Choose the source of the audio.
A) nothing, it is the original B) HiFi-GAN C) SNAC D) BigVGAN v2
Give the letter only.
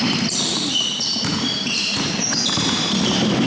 D